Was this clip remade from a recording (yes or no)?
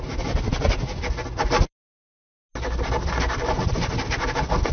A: no